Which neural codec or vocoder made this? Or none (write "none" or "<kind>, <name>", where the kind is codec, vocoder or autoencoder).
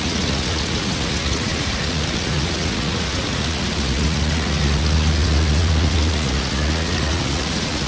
vocoder, Vocos